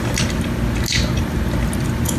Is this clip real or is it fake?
real